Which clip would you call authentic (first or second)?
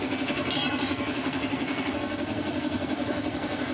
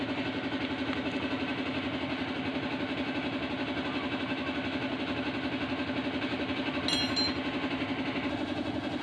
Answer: second